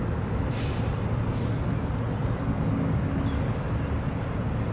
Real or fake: real